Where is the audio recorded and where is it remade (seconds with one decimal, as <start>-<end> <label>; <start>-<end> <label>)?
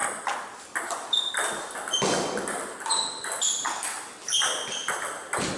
0.0-5.6 recorded